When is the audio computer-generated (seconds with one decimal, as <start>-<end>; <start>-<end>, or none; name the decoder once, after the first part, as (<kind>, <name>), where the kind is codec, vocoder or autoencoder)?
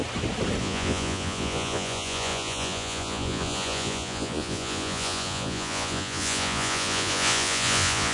0.6-8.1 (vocoder, Vocos)